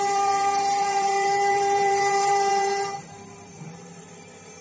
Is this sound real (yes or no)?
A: no